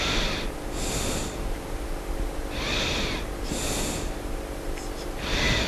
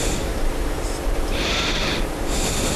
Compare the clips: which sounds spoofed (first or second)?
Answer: second